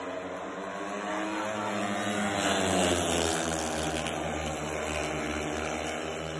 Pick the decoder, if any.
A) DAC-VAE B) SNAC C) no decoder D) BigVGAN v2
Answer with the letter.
C